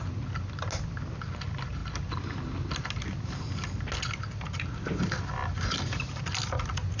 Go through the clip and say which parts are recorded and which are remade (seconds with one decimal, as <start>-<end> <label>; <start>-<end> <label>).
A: 0.0-7.0 recorded